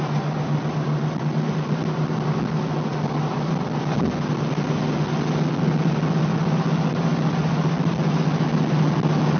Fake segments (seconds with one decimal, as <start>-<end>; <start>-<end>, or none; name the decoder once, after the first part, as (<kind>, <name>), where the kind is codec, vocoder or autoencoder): none